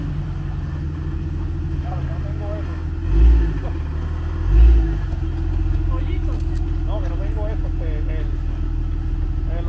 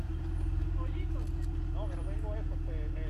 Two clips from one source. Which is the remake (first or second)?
second